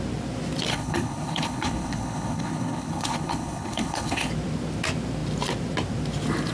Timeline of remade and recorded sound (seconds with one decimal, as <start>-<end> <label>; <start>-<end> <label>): 0.0-0.7 recorded; 0.7-4.3 remade; 4.3-6.5 recorded